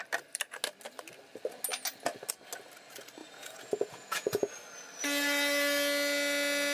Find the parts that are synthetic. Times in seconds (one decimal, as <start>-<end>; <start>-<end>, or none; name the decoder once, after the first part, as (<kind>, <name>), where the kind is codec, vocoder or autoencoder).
3.2-4.5 (vocoder, Vocos)